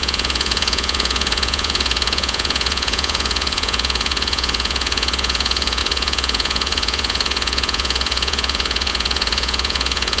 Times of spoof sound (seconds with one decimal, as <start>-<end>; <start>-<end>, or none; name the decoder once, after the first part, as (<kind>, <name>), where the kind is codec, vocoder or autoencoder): 0.0-10.2 (vocoder, Vocos)